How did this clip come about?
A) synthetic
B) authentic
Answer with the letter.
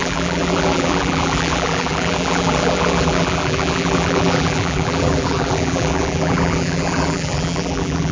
A